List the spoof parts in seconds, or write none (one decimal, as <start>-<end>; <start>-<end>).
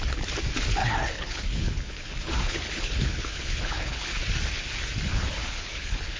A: 0.8-4.2; 5.1-6.2